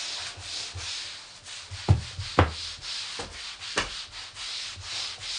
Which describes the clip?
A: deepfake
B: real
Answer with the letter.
B